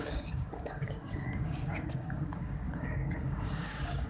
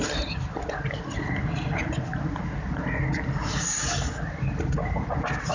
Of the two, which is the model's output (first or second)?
first